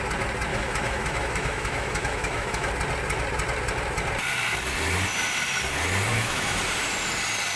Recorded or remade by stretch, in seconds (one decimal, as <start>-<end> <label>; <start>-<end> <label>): 0.0-0.5 recorded; 0.5-2.7 remade; 2.7-6.1 recorded; 6.1-6.6 remade; 6.6-7.6 recorded